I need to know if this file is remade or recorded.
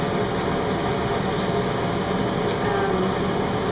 recorded